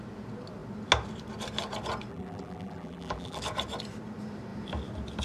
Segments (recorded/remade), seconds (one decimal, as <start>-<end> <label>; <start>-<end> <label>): 0.0-2.1 recorded; 2.1-3.4 remade; 3.4-5.2 recorded